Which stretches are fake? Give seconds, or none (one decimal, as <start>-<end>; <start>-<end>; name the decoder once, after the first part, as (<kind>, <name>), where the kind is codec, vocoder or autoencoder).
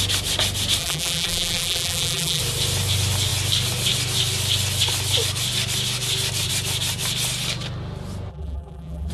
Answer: 0.8-2.4 (vocoder, BigVGAN v2); 8.3-9.1